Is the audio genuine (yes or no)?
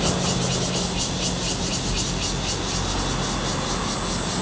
yes